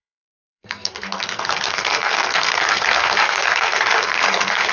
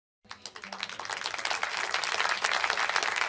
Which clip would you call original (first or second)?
second